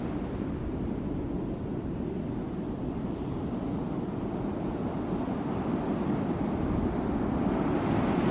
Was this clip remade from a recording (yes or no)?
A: no